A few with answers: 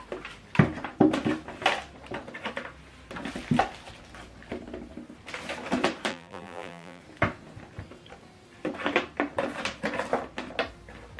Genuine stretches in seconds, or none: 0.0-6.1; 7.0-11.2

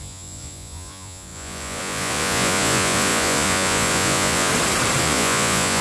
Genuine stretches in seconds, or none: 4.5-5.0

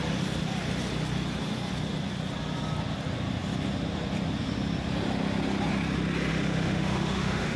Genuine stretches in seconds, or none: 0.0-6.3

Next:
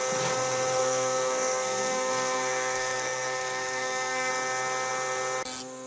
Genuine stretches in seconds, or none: 0.0-0.8; 4.3-5.9

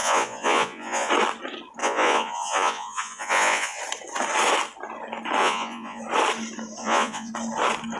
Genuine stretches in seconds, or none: 1.1-1.8; 3.8-5.4; 6.0-6.8; 7.3-8.0